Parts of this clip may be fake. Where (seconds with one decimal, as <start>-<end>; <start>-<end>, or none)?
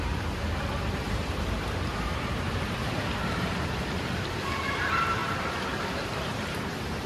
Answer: 0.0-7.1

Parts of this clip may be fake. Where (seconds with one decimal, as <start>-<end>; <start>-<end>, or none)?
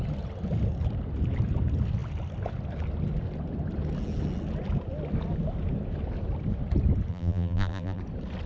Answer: 7.1-8.0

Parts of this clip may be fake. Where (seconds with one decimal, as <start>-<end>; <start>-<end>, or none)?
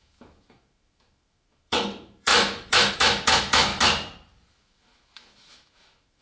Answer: 0.0-3.7; 4.5-6.2